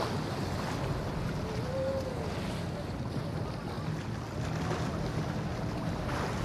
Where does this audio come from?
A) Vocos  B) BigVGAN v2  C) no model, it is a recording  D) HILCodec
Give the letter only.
C